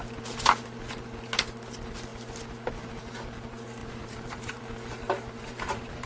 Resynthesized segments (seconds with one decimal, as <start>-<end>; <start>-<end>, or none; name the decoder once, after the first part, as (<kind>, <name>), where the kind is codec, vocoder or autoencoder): 3.8-4.6 (vocoder, BigVGAN v2); 5.0-6.1